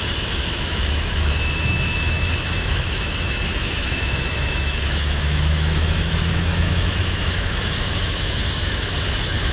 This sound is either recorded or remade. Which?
remade